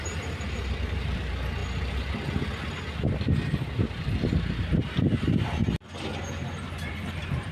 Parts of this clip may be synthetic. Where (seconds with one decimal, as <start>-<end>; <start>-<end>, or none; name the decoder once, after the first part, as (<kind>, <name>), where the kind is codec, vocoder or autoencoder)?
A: 0.0-1.6 (vocoder, BigVGAN v2); 4.0-5.6; 6.2-7.5